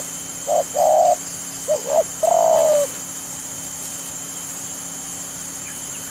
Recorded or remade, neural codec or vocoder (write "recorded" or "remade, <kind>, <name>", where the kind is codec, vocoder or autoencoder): recorded